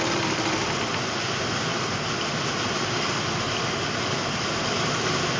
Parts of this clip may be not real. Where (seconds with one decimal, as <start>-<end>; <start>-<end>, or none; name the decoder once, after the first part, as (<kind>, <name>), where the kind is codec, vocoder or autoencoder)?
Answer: none